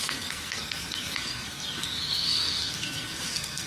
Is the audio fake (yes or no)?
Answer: yes